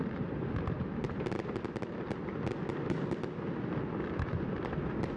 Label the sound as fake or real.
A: real